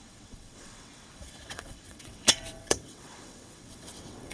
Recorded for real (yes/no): no